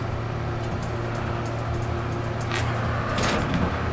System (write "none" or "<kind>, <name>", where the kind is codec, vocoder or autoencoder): none